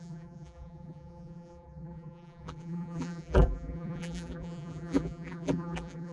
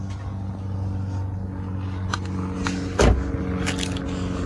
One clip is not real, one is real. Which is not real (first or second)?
first